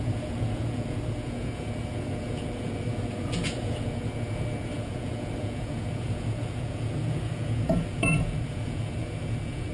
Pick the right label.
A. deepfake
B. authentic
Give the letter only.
A